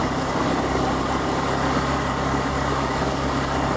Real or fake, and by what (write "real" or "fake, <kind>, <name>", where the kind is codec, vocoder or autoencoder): fake, codec, DAC